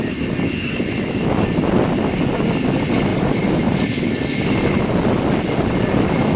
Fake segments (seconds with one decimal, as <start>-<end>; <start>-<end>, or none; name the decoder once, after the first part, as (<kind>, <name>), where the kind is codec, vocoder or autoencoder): 3.1-3.8 (vocoder, BigVGAN v2)